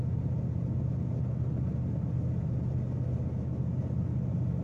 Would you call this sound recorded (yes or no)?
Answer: yes